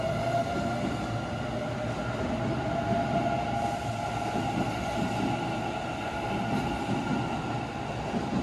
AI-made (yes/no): no